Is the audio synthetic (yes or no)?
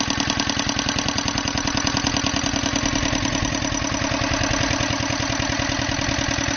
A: no